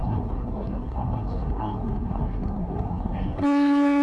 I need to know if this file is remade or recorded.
remade